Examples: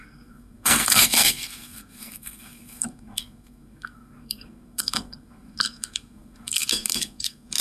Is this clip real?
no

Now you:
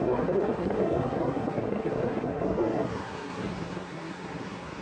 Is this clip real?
no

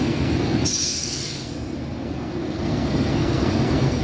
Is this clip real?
no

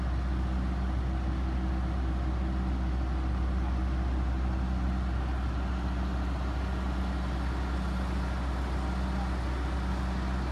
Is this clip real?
yes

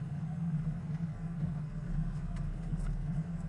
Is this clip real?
no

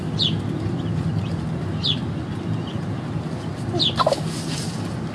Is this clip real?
yes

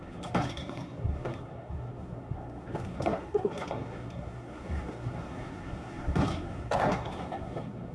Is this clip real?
no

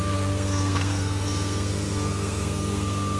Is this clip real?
no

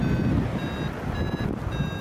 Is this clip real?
yes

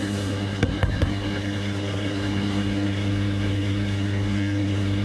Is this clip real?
no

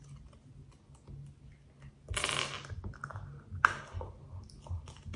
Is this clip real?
yes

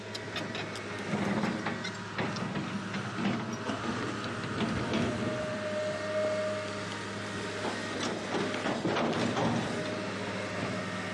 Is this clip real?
yes